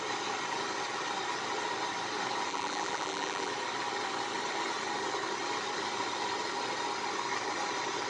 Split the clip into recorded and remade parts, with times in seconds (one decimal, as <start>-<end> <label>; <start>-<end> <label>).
0.0-2.5 recorded; 2.5-3.5 remade; 3.5-8.1 recorded